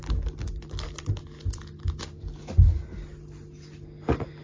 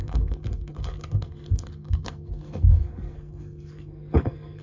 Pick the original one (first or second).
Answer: first